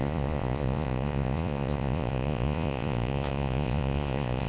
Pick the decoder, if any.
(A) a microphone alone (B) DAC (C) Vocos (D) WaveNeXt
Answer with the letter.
C